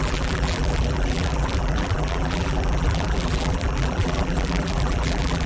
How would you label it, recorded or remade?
remade